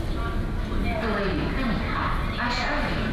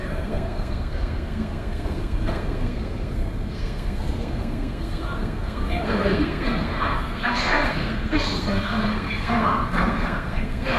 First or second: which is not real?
second